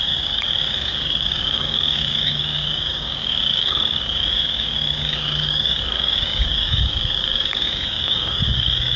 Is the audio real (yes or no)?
no